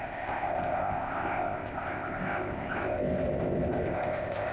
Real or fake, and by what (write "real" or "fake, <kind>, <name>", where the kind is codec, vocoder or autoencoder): fake, codec, ZipCodec